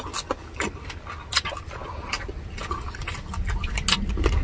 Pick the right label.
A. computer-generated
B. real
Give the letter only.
B